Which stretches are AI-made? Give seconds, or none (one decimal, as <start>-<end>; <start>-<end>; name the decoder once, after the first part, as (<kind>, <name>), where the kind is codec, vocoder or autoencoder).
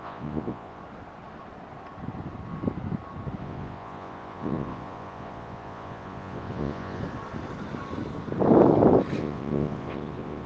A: 0.0-0.8 (vocoder, Vocos); 3.4-7.0; 9.2-10.5